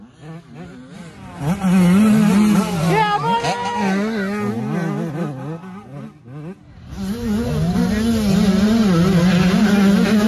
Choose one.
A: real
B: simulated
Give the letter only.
A